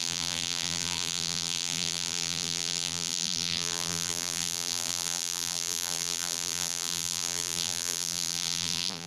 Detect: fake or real fake